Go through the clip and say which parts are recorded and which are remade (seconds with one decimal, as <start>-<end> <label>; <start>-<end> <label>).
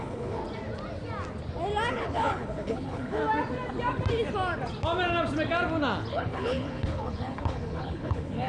0.0-0.4 remade; 0.4-1.9 recorded; 1.9-3.2 remade; 3.2-6.1 recorded; 6.1-8.5 remade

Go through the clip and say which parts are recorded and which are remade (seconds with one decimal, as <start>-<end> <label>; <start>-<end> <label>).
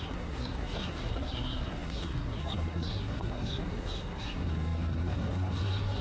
0.0-6.0 remade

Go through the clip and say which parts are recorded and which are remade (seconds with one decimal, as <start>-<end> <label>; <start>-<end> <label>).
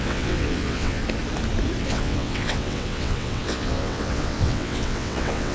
0.0-1.0 remade; 1.0-1.8 recorded; 1.8-5.5 remade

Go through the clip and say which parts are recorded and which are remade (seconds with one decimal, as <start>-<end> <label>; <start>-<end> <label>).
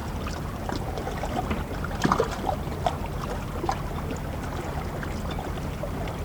0.0-0.7 recorded; 0.7-6.2 remade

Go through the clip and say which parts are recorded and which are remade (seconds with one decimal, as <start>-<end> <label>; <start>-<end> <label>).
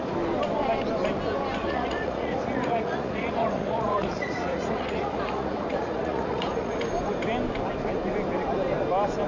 0.0-1.6 recorded; 1.6-6.8 remade; 6.8-9.3 recorded